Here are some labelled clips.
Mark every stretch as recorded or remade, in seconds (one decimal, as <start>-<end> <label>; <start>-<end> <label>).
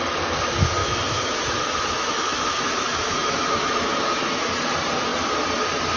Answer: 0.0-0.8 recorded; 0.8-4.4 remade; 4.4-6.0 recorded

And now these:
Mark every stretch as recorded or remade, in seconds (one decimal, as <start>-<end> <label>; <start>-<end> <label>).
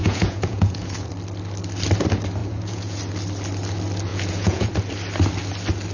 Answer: 0.0-1.1 remade; 1.1-2.4 recorded; 2.4-3.0 remade; 3.0-4.1 recorded; 4.1-4.7 remade; 4.7-5.9 recorded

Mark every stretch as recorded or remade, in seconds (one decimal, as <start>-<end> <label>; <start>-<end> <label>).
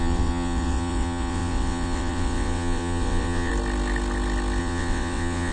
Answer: 0.0-3.5 remade; 3.5-4.6 recorded; 4.6-5.5 remade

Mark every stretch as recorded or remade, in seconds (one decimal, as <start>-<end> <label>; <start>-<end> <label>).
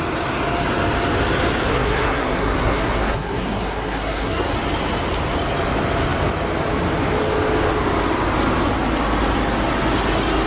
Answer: 0.0-1.7 recorded; 1.7-4.5 remade; 4.5-10.5 recorded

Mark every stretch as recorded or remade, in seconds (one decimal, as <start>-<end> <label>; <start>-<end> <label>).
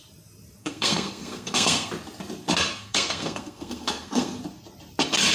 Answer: 0.0-0.6 recorded; 0.6-1.9 remade; 1.9-2.7 recorded; 2.7-4.4 remade; 4.4-5.3 recorded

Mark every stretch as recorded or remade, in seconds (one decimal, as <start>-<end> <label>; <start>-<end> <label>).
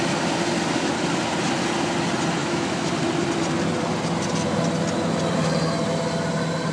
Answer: 0.0-2.4 recorded; 2.4-2.9 remade; 2.9-6.7 recorded